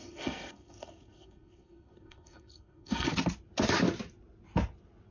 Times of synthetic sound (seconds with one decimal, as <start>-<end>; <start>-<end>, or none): 0.0-3.1